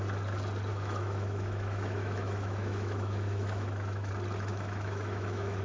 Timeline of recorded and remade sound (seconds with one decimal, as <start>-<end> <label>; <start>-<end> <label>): 0.0-0.7 recorded; 0.7-4.1 remade; 4.1-4.5 recorded; 4.5-5.6 remade